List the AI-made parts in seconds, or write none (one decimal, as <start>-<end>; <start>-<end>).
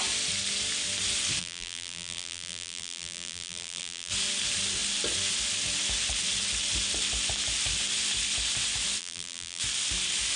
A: 1.4-4.1; 9.0-9.6